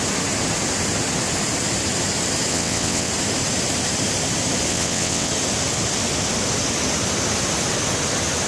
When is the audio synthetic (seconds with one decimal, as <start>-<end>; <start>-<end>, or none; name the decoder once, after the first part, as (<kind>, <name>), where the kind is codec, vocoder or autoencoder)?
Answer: 2.5-3.1 (vocoder, WaveNeXt); 4.7-5.3